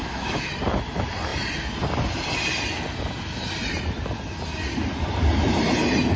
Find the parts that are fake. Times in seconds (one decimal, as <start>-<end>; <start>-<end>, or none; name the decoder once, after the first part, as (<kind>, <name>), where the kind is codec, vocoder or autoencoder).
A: 0.0-0.5 (autoencoder, DAC-VAE)